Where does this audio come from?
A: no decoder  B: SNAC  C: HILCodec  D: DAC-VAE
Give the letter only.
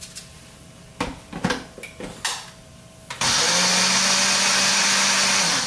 A